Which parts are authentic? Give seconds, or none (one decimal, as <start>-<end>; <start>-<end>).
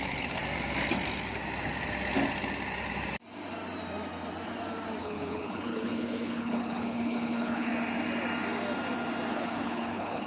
0.4-5.0; 7.7-9.3